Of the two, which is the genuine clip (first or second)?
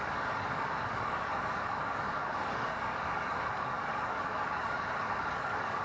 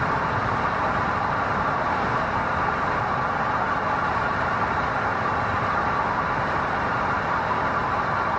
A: second